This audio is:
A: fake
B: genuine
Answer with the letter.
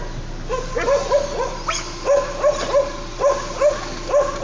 B